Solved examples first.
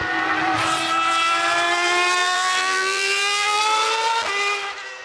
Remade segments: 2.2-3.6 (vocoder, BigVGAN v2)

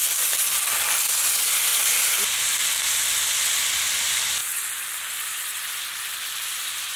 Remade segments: 1.7-3.3 (vocoder, BigVGAN v2)

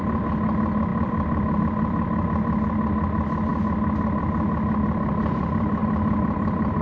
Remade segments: 0.9-1.6 (vocoder, BigVGAN v2); 5.8-6.8

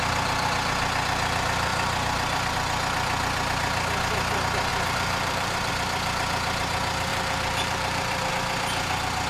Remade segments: 4.7-5.7 (vocoder, BigVGAN v2); 7.1-8.3

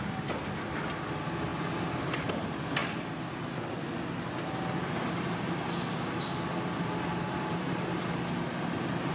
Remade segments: 7.1-7.8 (vocoder, BigVGAN v2)

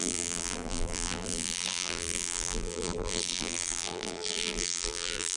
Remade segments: 0.0-5.4 (vocoder, BigVGAN v2)

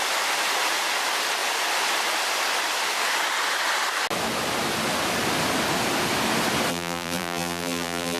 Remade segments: 6.7-8.2 (vocoder, BigVGAN v2)